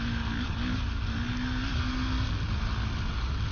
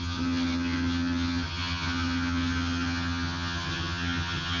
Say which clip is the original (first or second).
first